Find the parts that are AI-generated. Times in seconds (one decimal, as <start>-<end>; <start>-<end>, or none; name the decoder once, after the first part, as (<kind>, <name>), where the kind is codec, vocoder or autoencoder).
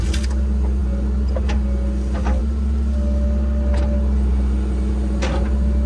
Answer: none